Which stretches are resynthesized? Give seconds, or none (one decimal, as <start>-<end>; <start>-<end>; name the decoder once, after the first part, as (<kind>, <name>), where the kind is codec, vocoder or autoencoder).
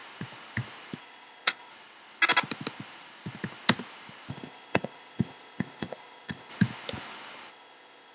1.0-1.7 (codec, ZipCodec); 4.3-6.5; 7.5-8.1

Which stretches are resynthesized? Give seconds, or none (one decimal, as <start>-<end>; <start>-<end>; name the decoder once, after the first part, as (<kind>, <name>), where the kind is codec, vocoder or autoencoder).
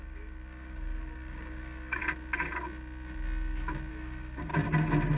0.0-2.0 (codec, DAC); 3.9-4.5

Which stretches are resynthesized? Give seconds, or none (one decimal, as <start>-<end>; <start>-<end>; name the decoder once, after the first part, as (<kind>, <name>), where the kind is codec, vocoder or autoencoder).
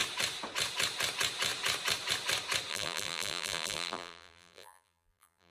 2.7-5.5 (vocoder, BigVGAN v2)